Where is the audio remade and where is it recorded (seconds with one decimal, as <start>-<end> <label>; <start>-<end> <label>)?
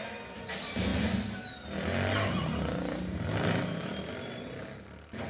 0.0-5.3 recorded